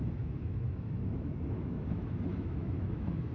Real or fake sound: fake